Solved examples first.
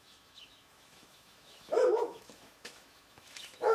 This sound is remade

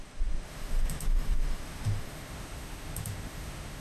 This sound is remade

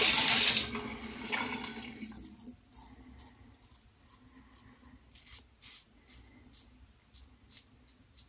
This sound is recorded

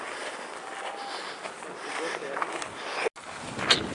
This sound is recorded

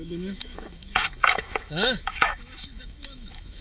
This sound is remade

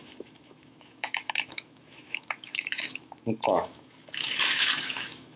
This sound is remade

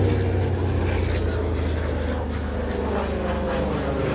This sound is recorded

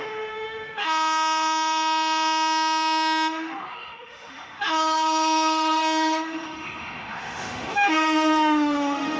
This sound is remade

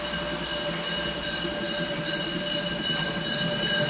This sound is recorded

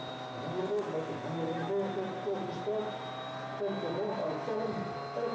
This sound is recorded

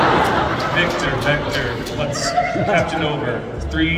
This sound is recorded